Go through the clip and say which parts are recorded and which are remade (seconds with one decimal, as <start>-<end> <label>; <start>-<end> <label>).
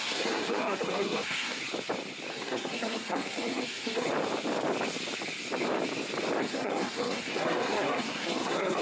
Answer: 0.0-1.6 remade; 1.6-2.3 recorded; 2.3-4.1 remade; 4.1-6.4 recorded; 6.4-8.8 remade